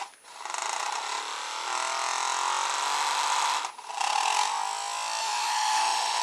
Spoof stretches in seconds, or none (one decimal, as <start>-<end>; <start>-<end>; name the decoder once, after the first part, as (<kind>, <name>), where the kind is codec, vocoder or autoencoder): 5.2-6.2 (autoencoder, DAC-VAE)